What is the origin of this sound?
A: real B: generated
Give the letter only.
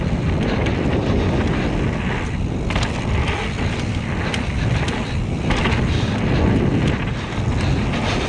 A